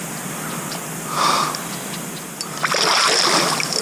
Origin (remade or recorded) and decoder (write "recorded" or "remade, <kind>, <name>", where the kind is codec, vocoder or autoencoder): recorded